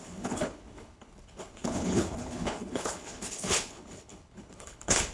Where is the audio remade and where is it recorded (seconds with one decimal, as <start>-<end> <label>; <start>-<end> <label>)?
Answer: 0.0-5.1 remade